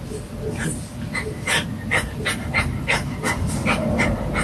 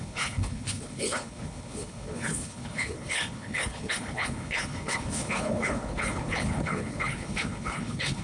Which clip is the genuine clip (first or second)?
first